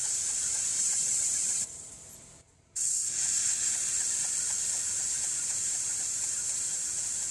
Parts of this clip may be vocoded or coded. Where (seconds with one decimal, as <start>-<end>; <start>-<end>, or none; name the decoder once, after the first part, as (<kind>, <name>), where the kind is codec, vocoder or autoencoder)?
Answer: 0.0-2.3 (vocoder, BigVGAN v2); 5.4-6.8